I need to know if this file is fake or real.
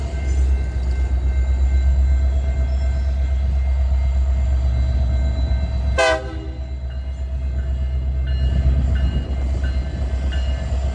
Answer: real